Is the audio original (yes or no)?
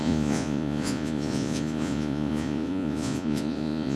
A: no